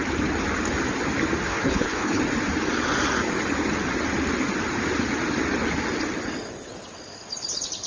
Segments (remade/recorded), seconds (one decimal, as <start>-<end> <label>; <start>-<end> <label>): 0.0-1.5 recorded; 1.5-2.2 remade; 2.2-7.9 recorded